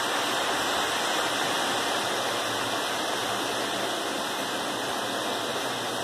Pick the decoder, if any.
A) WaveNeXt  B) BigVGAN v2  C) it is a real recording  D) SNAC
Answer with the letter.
C